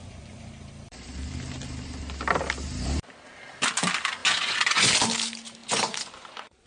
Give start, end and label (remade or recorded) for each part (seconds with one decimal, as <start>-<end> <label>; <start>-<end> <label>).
0.0-0.5 remade; 0.5-4.2 recorded; 4.2-4.9 remade; 4.9-5.6 recorded; 5.6-6.7 remade